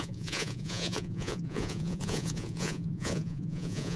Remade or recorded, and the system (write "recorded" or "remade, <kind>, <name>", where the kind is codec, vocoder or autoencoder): remade, vocoder, Vocos